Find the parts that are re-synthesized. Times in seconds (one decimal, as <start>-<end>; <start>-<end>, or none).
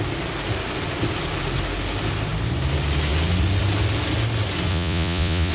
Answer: 4.7-5.5